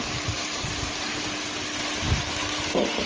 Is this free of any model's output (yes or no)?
yes